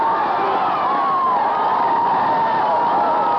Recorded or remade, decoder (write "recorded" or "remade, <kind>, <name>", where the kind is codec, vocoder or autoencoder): recorded